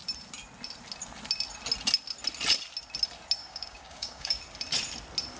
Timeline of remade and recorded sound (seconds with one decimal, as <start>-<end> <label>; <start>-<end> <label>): 0.0-3.4 recorded; 3.4-4.4 remade; 4.4-5.4 recorded